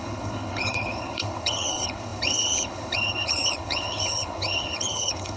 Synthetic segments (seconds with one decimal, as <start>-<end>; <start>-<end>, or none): 0.0-5.4